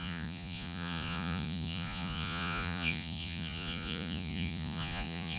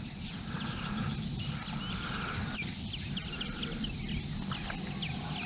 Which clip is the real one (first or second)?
second